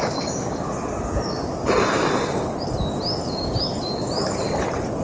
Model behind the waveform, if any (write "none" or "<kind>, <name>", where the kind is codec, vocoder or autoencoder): none